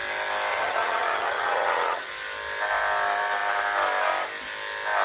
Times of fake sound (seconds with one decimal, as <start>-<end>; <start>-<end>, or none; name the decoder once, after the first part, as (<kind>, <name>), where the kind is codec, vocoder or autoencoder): 0.5-2.1 (vocoder, HiFi-GAN)